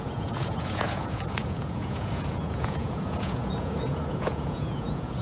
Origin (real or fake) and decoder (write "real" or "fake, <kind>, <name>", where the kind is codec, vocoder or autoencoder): fake, vocoder, Vocos